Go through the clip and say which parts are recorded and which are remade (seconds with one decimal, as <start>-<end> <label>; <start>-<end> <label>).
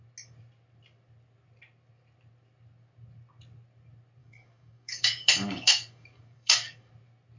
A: 0.0-4.2 recorded; 4.2-6.9 remade; 6.9-7.4 recorded